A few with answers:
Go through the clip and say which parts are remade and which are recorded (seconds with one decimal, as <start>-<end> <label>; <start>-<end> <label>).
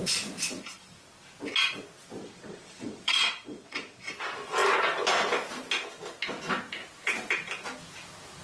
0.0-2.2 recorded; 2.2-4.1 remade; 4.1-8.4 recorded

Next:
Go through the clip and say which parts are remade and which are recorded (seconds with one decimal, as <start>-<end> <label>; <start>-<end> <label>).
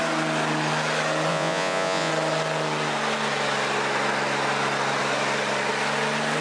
0.0-1.3 recorded; 1.3-2.1 remade; 2.1-6.4 recorded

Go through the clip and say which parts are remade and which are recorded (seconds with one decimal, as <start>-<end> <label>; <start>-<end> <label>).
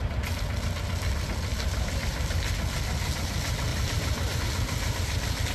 0.0-1.5 recorded; 1.5-2.1 remade; 2.1-3.7 recorded; 3.7-4.4 remade; 4.4-5.5 recorded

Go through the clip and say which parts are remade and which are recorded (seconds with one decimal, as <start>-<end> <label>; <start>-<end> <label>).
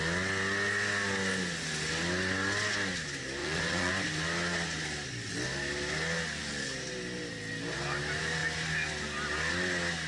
0.0-3.4 recorded; 3.4-3.9 remade; 3.9-10.1 recorded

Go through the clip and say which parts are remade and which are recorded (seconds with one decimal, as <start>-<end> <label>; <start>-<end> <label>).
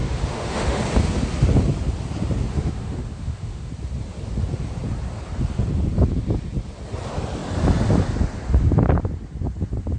0.0-0.8 remade; 0.8-2.5 recorded; 2.5-3.7 remade; 3.7-10.0 recorded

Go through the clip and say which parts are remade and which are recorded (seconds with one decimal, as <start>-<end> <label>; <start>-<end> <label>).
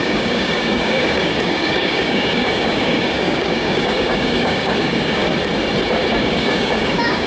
0.0-5.2 remade; 5.2-6.1 recorded; 6.1-7.3 remade